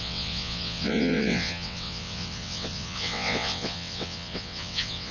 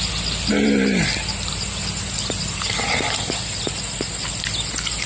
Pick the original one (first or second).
second